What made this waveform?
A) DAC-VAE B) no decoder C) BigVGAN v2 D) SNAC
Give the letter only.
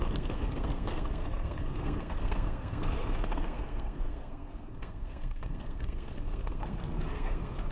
D